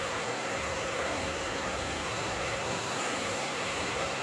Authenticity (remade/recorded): remade